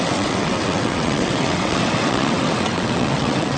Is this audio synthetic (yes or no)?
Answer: yes